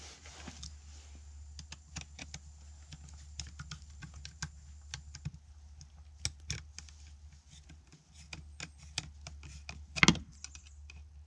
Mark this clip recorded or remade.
recorded